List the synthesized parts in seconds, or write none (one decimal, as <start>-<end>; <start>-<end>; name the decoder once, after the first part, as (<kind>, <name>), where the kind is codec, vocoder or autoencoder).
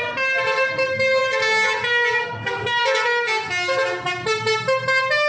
none